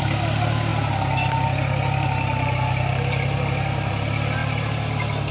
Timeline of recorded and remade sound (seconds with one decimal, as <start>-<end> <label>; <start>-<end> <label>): 0.0-5.3 recorded